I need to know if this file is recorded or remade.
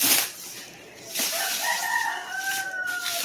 remade